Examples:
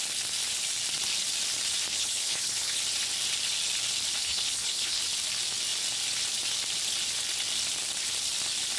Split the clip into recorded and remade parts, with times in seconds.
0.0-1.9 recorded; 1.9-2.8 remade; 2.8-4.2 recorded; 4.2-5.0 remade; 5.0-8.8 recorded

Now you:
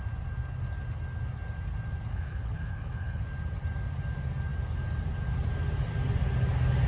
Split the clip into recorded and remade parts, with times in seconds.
0.0-2.1 recorded; 2.1-3.2 remade; 3.2-6.9 recorded

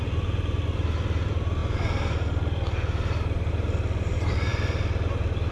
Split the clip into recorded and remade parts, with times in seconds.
0.0-5.5 recorded

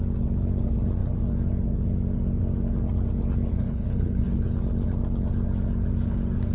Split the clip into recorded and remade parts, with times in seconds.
0.0-3.5 recorded; 3.5-4.5 remade; 4.5-6.5 recorded

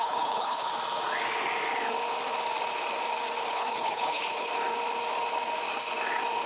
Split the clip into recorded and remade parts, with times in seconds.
0.0-0.7 remade; 0.7-3.5 recorded; 3.5-4.5 remade; 4.5-6.5 recorded

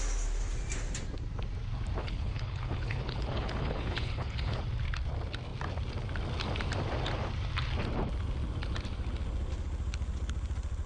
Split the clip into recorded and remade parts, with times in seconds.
0.0-2.0 recorded; 2.0-4.6 remade; 4.6-10.9 recorded

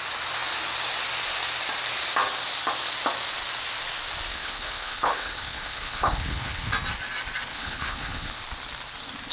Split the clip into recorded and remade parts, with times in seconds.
0.0-4.3 recorded; 4.3-6.7 remade; 6.7-7.5 recorded; 7.5-8.4 remade; 8.4-9.3 recorded

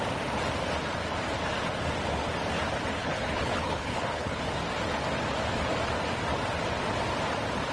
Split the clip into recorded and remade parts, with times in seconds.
0.0-3.0 recorded; 3.0-4.4 remade; 4.4-7.7 recorded